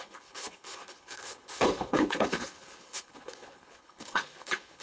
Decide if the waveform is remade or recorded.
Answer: remade